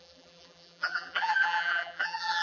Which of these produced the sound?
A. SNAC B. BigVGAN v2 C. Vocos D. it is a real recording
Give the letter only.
B